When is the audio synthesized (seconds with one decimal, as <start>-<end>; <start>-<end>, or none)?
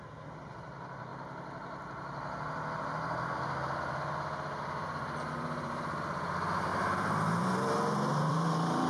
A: 0.0-1.1; 3.2-8.9